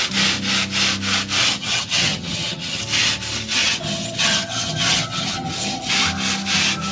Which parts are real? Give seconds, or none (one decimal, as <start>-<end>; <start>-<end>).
0.0-1.4; 2.8-3.6; 5.9-6.9